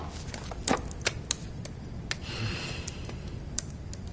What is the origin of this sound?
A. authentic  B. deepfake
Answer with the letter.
A